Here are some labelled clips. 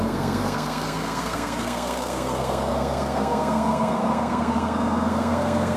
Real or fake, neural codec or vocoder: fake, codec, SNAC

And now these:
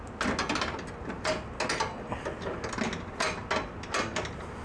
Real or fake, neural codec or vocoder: real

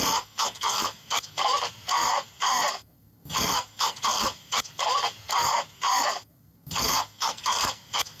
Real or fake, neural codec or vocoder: fake, codec, SNAC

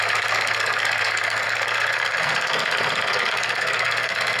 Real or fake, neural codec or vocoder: fake, codec, SNAC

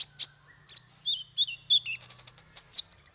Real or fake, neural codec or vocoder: real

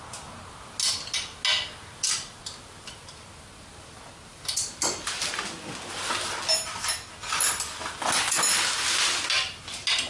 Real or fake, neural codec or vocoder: real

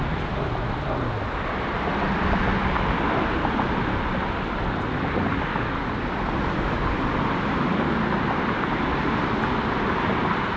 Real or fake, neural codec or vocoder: real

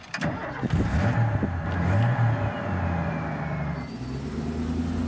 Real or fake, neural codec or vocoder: real